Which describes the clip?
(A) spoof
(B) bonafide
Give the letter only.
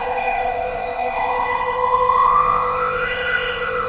A